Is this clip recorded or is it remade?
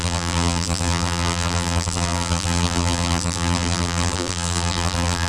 remade